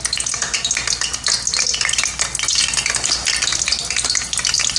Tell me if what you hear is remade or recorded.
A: recorded